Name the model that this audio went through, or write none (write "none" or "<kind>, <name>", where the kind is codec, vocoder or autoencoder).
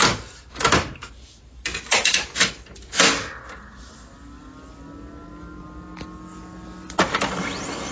none